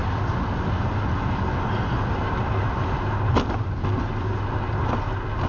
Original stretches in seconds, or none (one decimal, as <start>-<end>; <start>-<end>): 0.0-5.5